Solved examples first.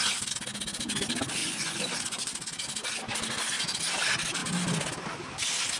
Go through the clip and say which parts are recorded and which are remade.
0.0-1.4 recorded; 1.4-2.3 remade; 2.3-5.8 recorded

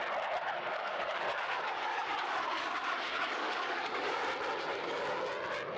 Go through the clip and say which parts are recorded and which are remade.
0.0-0.7 recorded; 0.7-4.2 remade; 4.2-4.7 recorded; 4.7-5.2 remade; 5.2-5.8 recorded

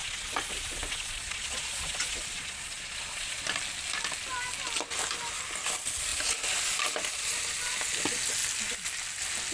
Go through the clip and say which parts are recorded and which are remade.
0.0-3.4 remade; 3.4-9.5 recorded

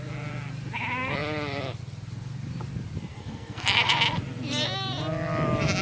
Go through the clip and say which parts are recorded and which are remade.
0.0-3.1 recorded; 3.1-3.9 remade; 3.9-5.8 recorded

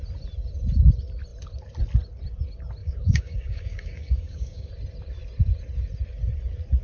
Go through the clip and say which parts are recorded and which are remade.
0.0-2.8 recorded; 2.8-4.7 remade; 4.7-6.8 recorded

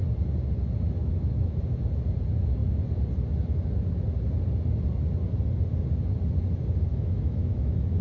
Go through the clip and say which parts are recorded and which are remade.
0.0-1.0 recorded; 1.0-1.6 remade; 1.6-6.9 recorded; 6.9-8.0 remade